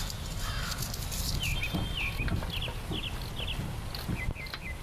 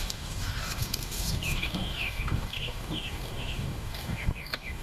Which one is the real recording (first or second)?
first